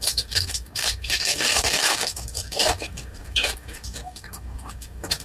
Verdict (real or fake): fake